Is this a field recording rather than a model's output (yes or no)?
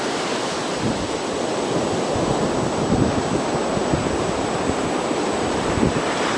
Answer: no